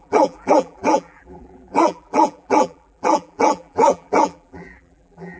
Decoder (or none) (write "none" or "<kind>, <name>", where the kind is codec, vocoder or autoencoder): vocoder, BigVGAN v2